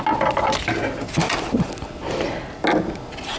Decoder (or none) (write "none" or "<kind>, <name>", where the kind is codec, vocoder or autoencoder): none